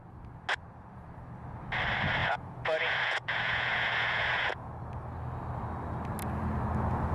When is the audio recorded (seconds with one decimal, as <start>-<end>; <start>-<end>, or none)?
0.0-2.2; 4.7-7.1